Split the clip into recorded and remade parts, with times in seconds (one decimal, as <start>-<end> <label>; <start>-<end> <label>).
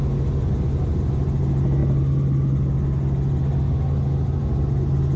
0.0-5.2 recorded